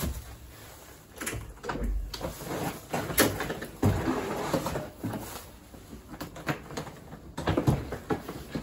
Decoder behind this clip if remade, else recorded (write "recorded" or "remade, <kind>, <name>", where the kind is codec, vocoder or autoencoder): recorded